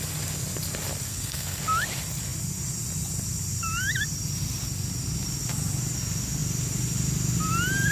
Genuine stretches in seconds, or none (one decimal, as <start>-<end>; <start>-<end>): 0.0-1.1; 1.6-7.9